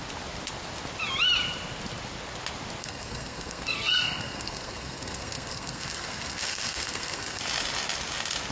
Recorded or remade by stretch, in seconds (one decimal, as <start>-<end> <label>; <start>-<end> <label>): 0.0-2.8 recorded; 2.8-7.4 remade; 7.4-8.5 recorded